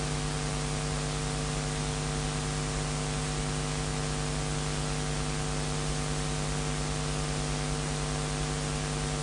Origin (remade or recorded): recorded